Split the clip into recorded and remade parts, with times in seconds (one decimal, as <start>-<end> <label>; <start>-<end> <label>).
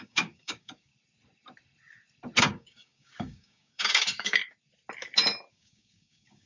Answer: 0.0-0.9 remade; 0.9-2.4 recorded; 2.4-4.4 remade; 4.4-5.5 recorded; 5.5-6.5 remade